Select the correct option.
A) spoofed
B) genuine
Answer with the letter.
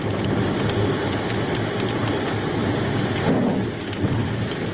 B